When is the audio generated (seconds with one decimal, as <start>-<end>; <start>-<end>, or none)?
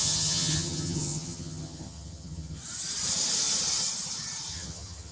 0.0-2.6; 4.5-5.1